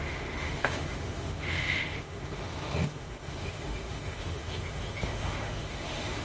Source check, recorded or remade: remade